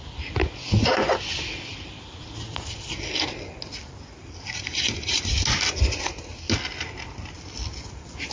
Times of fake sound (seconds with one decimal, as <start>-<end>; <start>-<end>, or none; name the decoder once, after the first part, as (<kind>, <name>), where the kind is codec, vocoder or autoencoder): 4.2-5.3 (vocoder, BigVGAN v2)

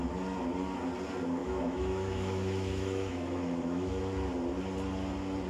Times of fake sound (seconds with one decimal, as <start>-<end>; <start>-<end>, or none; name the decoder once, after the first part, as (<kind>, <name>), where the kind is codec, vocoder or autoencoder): 1.4-4.0 (autoencoder, DAC-VAE)

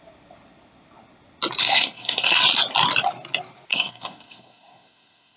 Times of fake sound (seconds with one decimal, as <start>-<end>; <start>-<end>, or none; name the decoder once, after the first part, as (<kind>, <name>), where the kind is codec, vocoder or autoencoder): 1.6-2.4 (codec, SNAC); 3.7-5.4